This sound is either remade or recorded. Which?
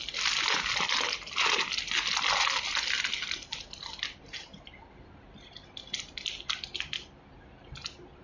recorded